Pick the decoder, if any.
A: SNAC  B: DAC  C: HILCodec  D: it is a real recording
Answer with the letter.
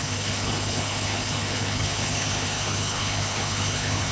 C